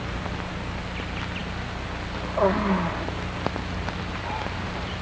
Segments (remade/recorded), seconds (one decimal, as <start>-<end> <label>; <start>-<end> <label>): 0.0-5.0 recorded